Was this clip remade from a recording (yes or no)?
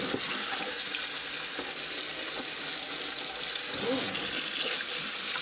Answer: no